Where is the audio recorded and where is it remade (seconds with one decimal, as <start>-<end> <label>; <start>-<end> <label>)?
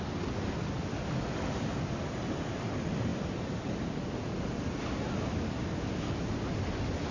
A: 0.0-3.1 recorded; 3.1-3.8 remade; 3.8-7.1 recorded